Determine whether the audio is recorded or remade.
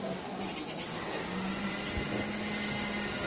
recorded